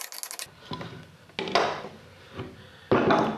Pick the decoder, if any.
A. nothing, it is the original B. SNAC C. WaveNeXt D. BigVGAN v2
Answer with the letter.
A